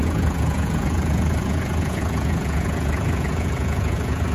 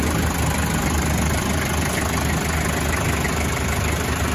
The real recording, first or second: second